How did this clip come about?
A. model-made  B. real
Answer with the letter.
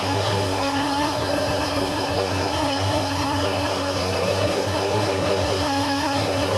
A